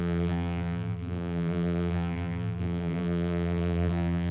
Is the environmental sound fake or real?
fake